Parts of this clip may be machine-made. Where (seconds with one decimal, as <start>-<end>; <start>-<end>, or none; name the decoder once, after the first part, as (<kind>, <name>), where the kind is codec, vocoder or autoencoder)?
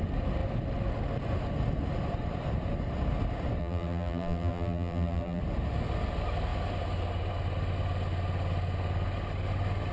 3.6-5.4 (vocoder, BigVGAN v2)